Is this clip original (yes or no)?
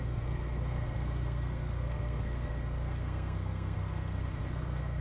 no